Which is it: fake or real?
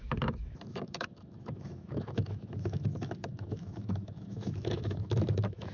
fake